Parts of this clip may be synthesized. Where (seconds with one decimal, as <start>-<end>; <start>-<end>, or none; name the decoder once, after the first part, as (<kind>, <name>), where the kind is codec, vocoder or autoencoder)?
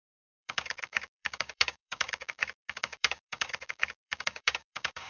0.0-5.1 (codec, DAC)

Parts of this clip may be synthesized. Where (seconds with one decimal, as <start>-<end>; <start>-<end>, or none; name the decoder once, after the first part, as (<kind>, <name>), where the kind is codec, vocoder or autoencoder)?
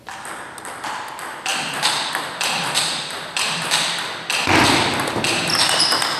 none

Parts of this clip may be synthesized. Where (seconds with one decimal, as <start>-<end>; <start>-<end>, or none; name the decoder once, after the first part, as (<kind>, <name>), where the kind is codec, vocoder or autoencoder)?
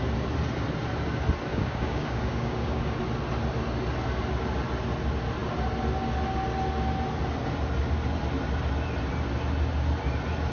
1.5-3.0 (codec, DAC)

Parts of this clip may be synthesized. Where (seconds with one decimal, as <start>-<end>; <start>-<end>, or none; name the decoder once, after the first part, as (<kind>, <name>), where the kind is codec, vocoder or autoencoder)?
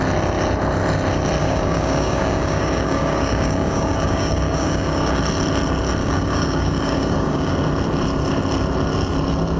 1.4-5.2 (codec, DAC); 6.0-7.5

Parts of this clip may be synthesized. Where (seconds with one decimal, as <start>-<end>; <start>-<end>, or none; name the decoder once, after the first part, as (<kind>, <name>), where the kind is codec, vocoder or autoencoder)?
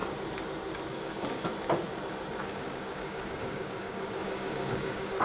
0.9-1.5 (codec, DAC); 2.4-5.2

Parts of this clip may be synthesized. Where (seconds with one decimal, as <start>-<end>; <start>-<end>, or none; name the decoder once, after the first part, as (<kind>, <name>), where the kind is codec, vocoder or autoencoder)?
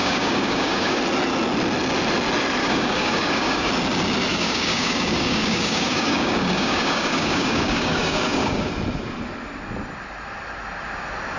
0.0-1.0 (codec, DAC); 2.6-3.7; 4.3-8.7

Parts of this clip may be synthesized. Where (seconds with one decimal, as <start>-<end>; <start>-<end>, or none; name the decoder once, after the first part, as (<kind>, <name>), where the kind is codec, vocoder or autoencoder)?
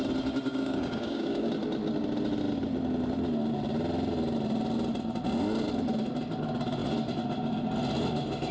0.5-1.5 (codec, DAC)